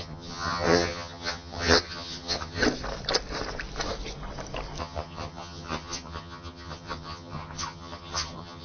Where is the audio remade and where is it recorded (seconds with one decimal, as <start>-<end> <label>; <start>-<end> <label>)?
0.0-2.6 remade; 2.6-4.8 recorded; 4.8-8.6 remade